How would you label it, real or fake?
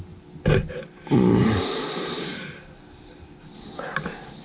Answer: real